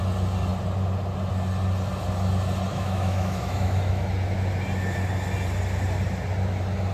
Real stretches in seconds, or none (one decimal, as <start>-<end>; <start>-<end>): 0.0-2.7; 4.1-6.9